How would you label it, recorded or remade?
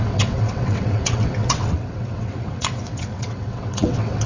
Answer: remade